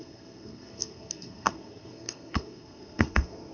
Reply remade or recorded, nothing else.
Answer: remade